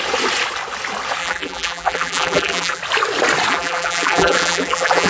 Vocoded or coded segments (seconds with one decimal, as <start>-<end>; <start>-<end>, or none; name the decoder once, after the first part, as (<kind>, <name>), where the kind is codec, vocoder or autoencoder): 1.2-2.8 (vocoder, BigVGAN v2); 3.5-5.1